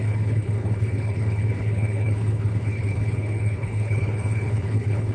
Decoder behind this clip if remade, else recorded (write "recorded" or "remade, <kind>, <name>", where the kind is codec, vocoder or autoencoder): remade, codec, HILCodec